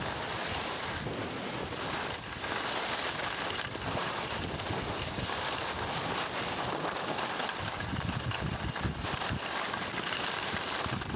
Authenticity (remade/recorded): remade